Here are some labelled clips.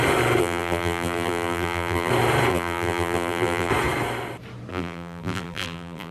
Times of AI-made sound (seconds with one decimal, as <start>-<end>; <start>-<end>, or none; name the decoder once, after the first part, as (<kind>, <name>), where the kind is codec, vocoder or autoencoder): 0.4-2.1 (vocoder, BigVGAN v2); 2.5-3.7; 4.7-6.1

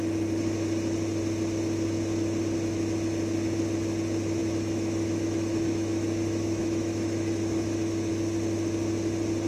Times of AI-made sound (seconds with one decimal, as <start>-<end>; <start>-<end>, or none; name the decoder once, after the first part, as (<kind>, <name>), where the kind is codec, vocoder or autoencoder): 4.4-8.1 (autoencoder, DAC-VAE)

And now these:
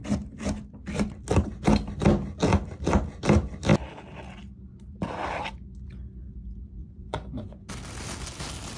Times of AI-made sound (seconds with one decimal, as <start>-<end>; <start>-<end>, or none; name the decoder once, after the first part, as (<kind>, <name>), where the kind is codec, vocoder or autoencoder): 6.8-7.7 (vocoder, Vocos)

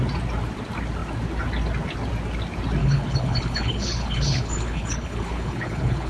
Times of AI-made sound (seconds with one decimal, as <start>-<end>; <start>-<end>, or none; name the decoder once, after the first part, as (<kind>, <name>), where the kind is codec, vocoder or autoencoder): 2.8-6.1 (codec, HILCodec)

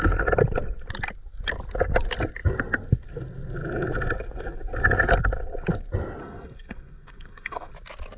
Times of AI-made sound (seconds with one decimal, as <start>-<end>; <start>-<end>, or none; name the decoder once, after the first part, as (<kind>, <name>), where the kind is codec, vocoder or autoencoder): 6.2-7.7 (codec, SNAC)